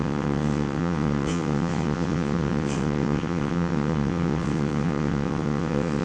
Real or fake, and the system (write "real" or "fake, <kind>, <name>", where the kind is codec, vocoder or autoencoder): fake, vocoder, WaveNeXt